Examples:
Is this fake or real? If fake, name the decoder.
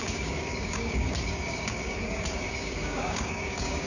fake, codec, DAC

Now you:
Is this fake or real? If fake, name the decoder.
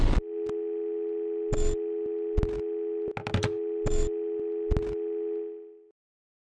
real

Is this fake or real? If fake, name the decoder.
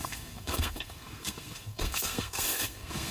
fake, codec, SNAC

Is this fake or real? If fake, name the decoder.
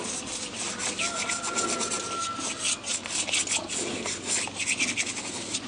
real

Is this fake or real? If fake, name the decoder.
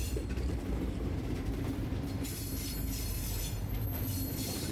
fake, vocoder, BigVGAN v2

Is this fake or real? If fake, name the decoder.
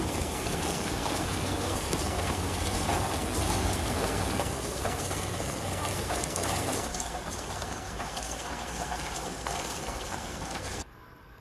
fake, codec, SNAC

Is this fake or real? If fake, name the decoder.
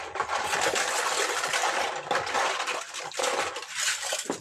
real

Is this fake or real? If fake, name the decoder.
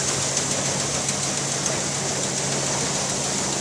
real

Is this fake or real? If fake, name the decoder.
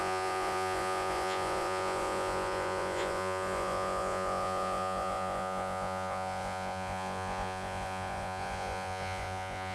fake, vocoder, Vocos